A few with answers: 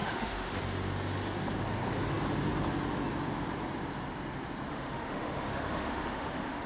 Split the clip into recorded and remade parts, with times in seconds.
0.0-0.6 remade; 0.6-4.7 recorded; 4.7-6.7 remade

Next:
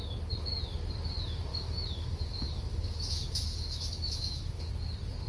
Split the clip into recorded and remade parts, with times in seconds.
0.0-1.5 recorded; 1.5-4.7 remade; 4.7-5.3 recorded

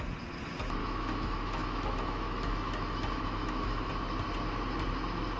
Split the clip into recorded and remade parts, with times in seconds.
0.0-0.8 recorded; 0.8-3.9 remade; 3.9-5.4 recorded

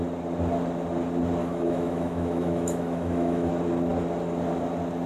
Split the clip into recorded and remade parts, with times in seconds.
0.0-1.4 recorded; 1.4-3.5 remade; 3.5-5.1 recorded

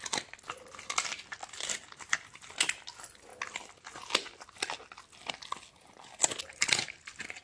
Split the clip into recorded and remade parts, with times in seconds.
0.0-7.4 recorded

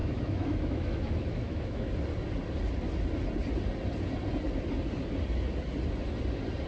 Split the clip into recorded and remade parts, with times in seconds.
0.0-1.9 remade; 1.9-6.7 recorded

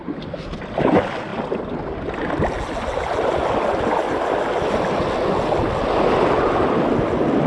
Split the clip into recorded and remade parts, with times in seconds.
0.0-7.5 recorded